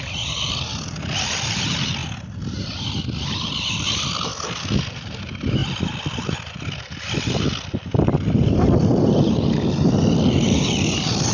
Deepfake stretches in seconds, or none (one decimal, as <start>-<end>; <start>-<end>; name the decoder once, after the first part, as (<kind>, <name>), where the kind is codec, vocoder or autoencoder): none